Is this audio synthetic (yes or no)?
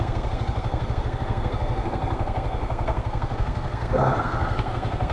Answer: yes